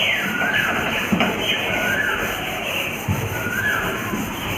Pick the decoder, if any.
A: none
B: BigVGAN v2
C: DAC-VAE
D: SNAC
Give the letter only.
B